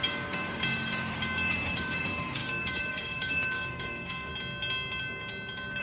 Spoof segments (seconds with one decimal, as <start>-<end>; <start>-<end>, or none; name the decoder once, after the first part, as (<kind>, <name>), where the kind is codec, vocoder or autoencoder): 0.0-4.3 (codec, DAC)